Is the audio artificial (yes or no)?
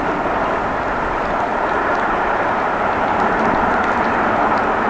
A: no